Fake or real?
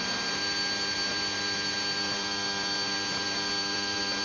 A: fake